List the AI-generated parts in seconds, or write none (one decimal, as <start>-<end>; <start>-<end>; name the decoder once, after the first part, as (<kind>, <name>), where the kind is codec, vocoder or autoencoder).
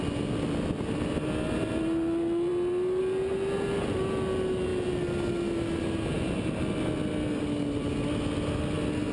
none